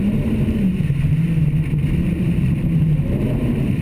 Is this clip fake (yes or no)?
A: yes